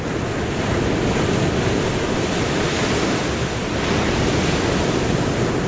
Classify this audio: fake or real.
real